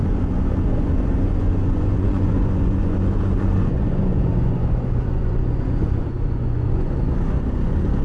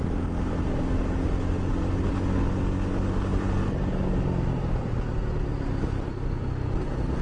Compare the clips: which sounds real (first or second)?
second